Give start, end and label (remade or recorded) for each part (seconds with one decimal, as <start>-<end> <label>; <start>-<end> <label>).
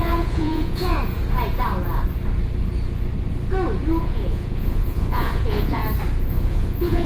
0.0-1.0 remade; 1.0-4.0 recorded; 4.0-5.8 remade; 5.8-6.3 recorded; 6.3-7.1 remade